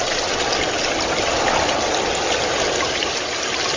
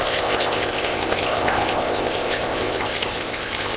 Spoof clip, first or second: second